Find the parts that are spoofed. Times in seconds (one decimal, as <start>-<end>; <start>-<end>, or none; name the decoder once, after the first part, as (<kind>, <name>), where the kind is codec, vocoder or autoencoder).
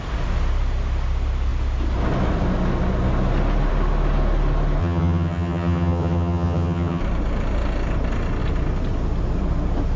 4.8-7.0 (vocoder, HiFi-GAN)